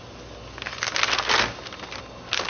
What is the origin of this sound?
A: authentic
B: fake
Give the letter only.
A